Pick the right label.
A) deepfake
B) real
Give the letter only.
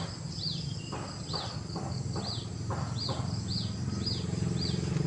A